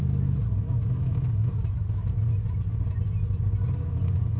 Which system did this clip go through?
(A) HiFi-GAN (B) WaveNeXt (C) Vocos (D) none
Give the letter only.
D